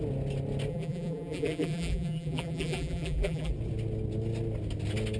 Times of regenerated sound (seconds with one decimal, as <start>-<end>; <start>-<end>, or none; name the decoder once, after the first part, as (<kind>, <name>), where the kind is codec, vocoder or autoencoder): 0.7-3.5 (vocoder, BigVGAN v2)